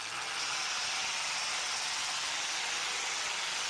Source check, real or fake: real